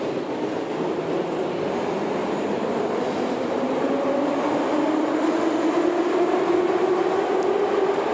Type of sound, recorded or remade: recorded